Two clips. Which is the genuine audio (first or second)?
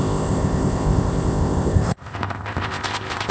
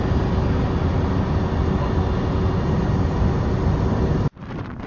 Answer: second